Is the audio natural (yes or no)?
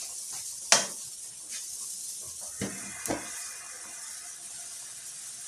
yes